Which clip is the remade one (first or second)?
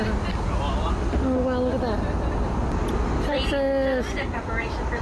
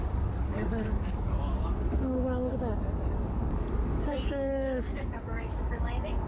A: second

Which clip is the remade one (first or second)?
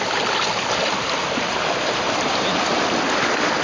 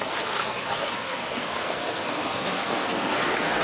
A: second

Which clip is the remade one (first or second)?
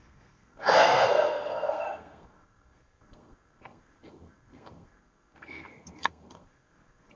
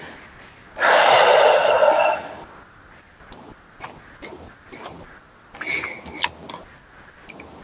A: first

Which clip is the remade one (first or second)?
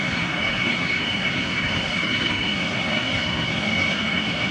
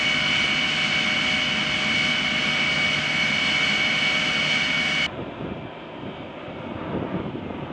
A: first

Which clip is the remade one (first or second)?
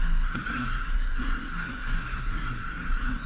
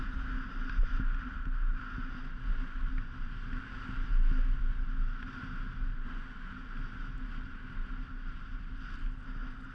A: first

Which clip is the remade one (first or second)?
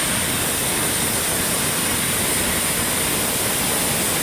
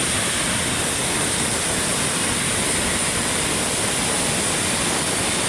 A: second